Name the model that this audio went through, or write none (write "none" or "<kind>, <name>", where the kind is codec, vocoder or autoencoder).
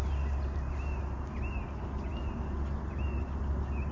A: none